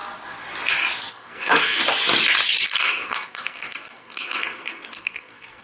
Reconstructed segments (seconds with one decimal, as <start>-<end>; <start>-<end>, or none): 1.1-1.8; 2.6-5.6